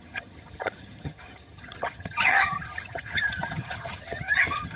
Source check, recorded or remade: remade